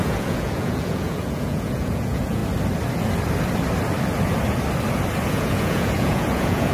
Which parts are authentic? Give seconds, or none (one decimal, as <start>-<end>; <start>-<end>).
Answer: 2.4-5.3